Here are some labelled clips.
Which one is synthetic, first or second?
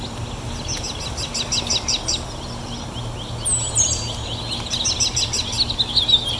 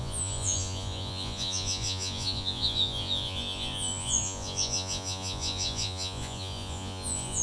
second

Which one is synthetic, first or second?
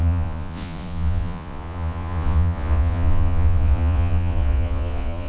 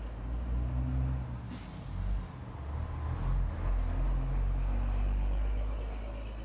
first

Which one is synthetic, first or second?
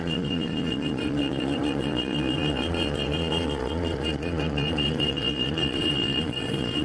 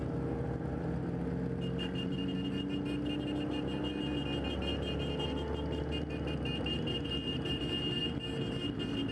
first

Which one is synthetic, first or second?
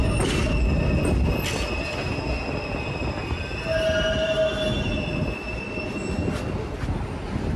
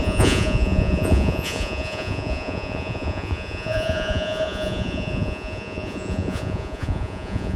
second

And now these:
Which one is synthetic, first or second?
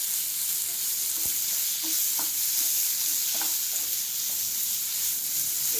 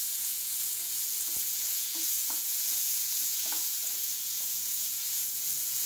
second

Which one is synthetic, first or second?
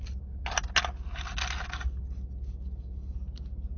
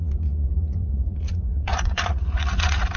second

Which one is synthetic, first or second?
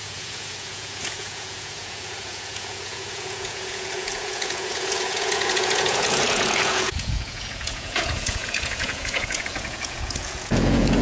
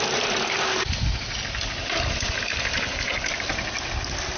first